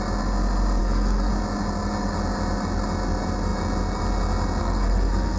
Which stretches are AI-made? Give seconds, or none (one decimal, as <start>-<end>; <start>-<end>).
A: 0.8-1.3; 4.6-5.4